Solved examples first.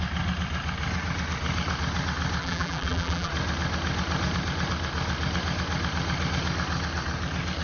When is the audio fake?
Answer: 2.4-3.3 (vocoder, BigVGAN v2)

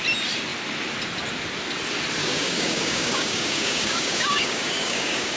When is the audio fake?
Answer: 2.2-5.4 (codec, DAC)

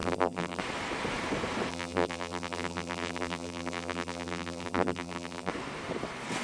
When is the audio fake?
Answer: 0.0-0.6 (vocoder, BigVGAN v2); 1.7-5.5